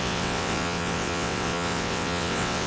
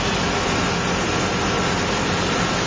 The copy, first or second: first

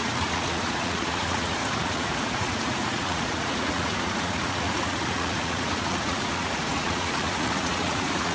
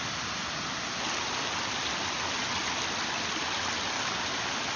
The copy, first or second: first